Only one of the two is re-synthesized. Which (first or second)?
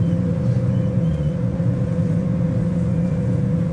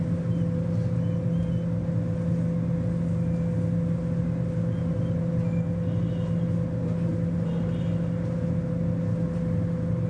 first